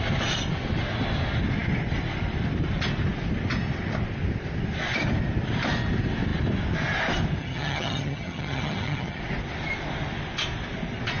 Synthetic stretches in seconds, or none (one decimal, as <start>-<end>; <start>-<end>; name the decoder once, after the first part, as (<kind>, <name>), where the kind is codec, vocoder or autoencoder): 7.4-9.2 (vocoder, HiFi-GAN)